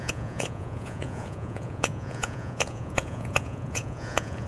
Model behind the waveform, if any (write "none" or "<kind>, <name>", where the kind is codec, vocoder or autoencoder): vocoder, Vocos